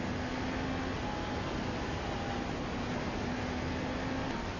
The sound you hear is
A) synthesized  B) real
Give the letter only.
B